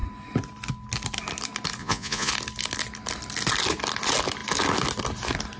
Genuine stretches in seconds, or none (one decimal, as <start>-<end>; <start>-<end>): 0.0-1.8; 2.3-5.6